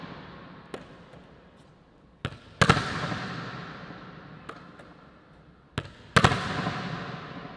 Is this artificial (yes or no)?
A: no